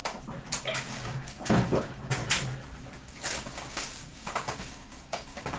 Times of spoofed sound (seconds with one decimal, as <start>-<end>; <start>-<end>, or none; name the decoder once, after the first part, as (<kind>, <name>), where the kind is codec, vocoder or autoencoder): 0.6-2.2 (codec, DAC); 3.0-5.6